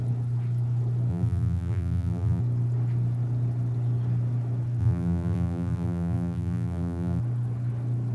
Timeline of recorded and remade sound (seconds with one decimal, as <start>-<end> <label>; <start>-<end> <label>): 0.0-1.1 recorded; 1.1-2.4 remade; 2.4-4.8 recorded; 4.8-7.2 remade; 7.2-8.1 recorded